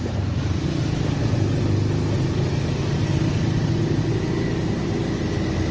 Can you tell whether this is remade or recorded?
recorded